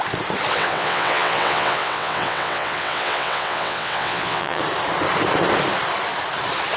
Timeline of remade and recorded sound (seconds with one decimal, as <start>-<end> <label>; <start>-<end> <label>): 0.0-0.5 recorded; 0.5-4.6 remade; 4.6-6.8 recorded